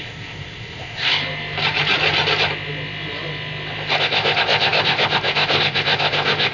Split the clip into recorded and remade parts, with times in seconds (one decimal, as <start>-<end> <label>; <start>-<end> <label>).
0.0-1.2 remade; 1.2-4.0 recorded; 4.0-6.5 remade